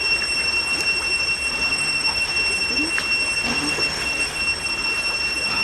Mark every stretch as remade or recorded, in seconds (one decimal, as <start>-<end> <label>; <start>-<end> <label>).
0.0-1.7 recorded; 1.7-2.3 remade; 2.3-3.5 recorded; 3.5-4.4 remade; 4.4-5.6 recorded